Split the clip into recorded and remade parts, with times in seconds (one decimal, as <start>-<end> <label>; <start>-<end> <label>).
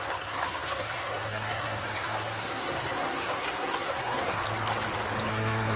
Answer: 0.0-4.4 remade; 4.4-5.3 recorded; 5.3-5.8 remade